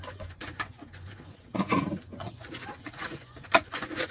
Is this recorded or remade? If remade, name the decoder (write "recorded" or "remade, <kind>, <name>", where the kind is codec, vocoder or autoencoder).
remade, vocoder, Vocos